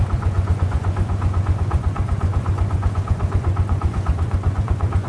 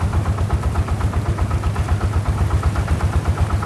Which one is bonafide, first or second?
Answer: second